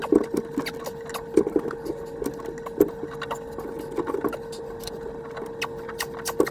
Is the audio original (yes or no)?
yes